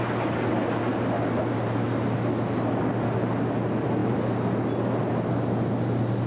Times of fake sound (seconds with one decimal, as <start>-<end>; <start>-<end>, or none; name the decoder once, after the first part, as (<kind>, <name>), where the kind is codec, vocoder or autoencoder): none

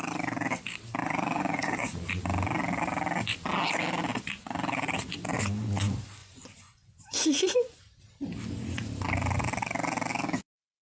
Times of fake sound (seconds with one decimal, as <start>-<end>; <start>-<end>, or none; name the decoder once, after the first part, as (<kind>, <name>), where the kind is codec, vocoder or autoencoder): 1.0-2.2 (vocoder, Vocos); 6.2-7.8

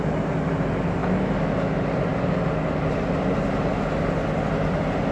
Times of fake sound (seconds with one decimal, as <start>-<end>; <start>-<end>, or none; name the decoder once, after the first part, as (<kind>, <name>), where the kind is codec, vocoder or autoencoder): 1.0-1.5 (autoencoder, DAC-VAE)

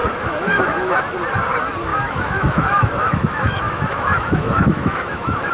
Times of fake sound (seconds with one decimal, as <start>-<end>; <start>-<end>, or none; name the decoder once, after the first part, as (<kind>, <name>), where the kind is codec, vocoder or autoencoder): 0.0-1.0 (autoencoder, DAC-VAE); 1.9-5.5